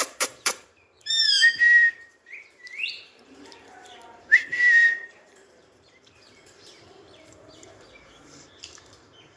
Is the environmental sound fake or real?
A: fake